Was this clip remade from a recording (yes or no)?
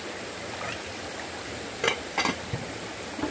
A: no